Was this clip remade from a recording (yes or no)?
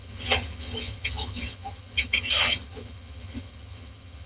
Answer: yes